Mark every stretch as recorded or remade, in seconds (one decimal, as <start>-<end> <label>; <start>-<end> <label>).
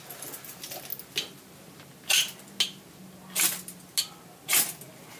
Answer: 0.0-5.2 recorded